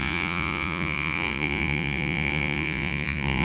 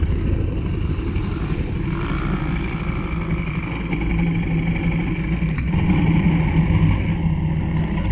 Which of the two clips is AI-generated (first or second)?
first